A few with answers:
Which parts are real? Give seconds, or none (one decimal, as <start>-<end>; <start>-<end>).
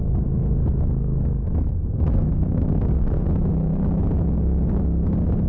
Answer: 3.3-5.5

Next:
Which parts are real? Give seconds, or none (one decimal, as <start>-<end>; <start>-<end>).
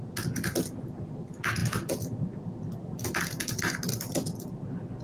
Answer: 0.0-5.0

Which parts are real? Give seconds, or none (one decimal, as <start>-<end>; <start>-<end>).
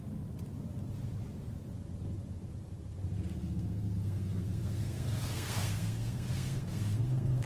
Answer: 0.0-3.4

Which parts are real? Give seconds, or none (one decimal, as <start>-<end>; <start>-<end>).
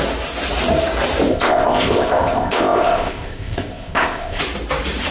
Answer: 0.0-1.3; 4.4-5.1